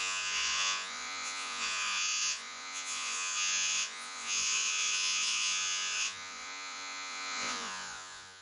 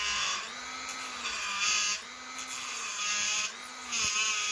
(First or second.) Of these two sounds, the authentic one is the second